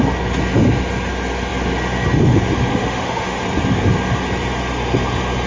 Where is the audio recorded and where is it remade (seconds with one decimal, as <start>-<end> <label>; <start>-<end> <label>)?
0.0-2.7 recorded; 2.7-3.4 remade; 3.4-5.5 recorded